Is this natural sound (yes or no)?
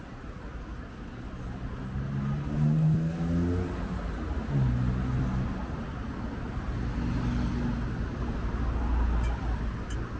yes